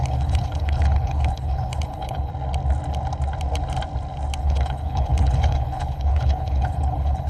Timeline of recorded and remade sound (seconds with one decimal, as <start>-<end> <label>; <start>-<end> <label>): 0.0-2.3 remade; 2.3-4.4 recorded; 4.4-7.3 remade